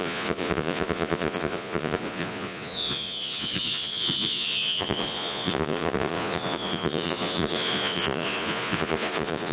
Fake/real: fake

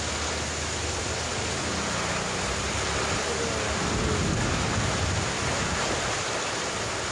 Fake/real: real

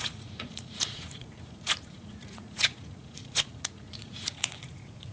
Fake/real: fake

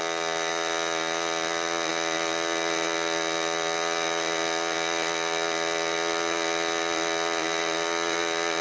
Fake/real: real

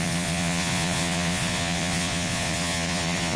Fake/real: fake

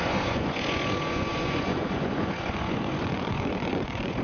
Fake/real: fake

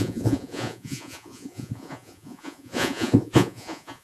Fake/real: fake